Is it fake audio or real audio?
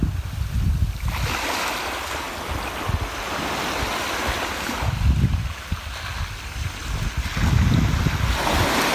real